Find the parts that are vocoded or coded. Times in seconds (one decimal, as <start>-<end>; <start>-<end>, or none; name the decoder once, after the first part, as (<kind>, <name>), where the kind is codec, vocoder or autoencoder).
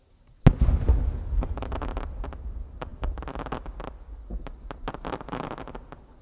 none